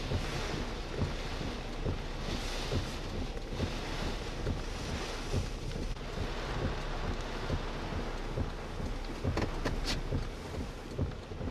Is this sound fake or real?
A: real